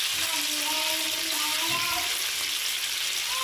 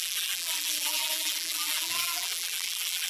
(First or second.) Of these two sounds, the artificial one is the second